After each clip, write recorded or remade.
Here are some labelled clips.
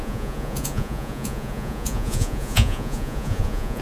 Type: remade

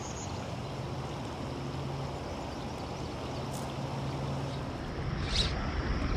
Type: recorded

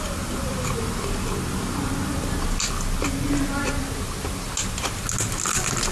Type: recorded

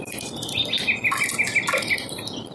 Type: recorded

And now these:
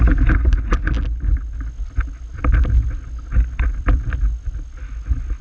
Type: recorded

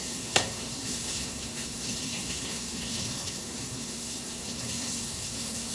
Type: remade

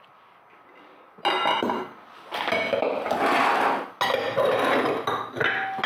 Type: recorded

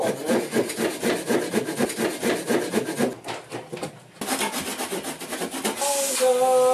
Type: recorded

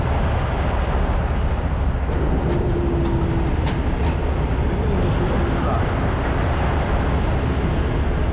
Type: recorded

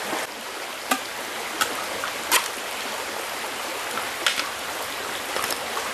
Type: recorded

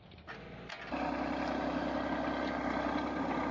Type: recorded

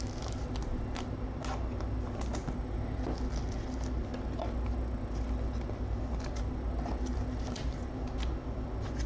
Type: recorded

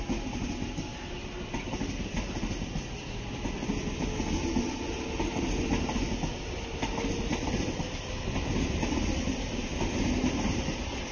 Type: recorded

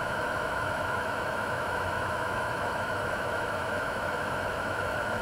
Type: remade